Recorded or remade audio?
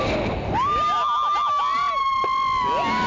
recorded